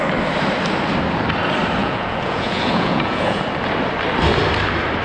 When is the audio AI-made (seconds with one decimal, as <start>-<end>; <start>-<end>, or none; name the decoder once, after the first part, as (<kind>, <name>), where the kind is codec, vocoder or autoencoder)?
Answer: 1.8-3.4 (vocoder, Vocos)